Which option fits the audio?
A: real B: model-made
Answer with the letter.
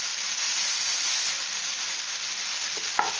A